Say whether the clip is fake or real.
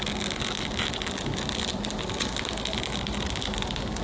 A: real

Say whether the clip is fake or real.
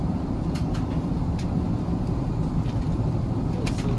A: fake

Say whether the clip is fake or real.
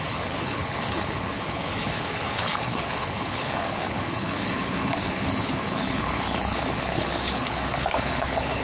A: fake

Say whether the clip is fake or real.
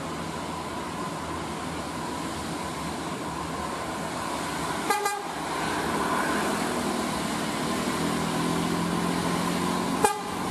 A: real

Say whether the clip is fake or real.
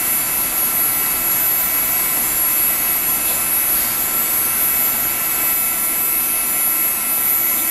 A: real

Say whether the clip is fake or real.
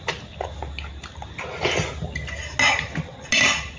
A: real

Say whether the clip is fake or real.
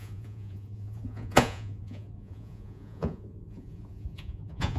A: fake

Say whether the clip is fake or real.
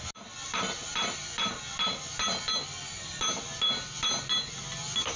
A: real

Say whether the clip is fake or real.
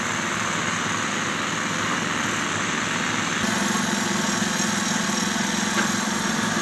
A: real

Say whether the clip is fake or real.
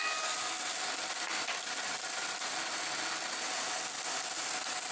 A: real